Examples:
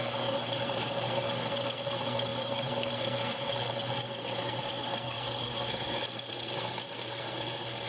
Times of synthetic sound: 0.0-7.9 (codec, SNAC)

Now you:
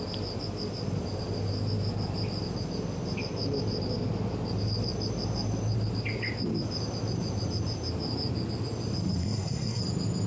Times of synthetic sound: 9.2-9.8 (codec, SNAC)